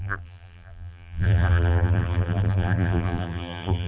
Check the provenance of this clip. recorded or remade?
remade